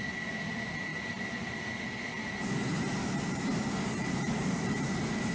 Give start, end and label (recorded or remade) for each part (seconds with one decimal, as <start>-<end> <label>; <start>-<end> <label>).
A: 0.0-5.3 recorded